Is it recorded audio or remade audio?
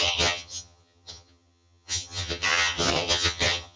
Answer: remade